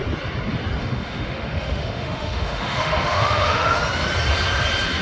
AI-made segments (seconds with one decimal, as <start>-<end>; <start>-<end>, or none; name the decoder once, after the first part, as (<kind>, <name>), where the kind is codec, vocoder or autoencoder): 0.8-3.8 (autoencoder, DAC-VAE)